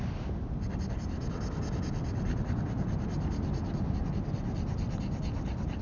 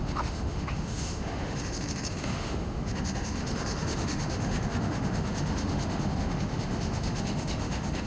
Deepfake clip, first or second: second